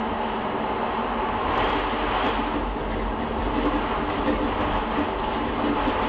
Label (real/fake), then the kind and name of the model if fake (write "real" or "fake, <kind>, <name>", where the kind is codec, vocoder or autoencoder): real